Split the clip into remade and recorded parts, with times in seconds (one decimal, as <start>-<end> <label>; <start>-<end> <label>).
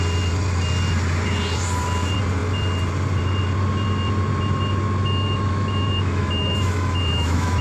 0.0-5.0 recorded; 5.0-7.6 remade